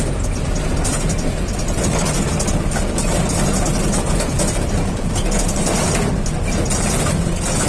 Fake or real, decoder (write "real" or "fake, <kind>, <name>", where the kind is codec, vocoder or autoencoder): real